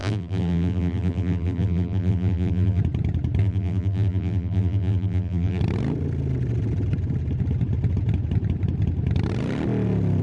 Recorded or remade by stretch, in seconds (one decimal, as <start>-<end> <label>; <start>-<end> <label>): 0.0-2.8 remade; 2.8-3.4 recorded; 3.4-5.6 remade; 5.6-10.2 recorded